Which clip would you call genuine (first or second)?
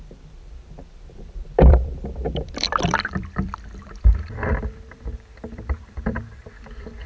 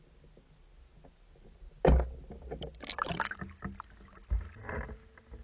second